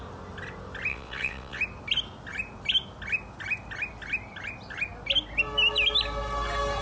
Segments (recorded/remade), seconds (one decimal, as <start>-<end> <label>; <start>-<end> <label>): 0.0-0.9 recorded; 0.9-1.6 remade; 1.6-6.8 recorded